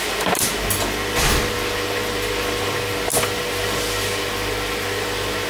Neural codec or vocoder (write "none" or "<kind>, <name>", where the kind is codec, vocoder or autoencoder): none